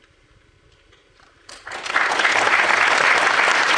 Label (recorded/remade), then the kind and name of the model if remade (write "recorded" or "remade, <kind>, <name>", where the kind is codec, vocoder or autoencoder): recorded